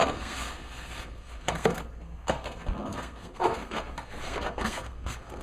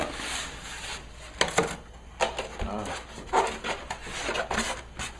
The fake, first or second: first